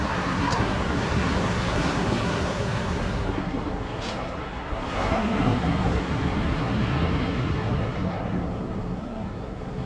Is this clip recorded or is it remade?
remade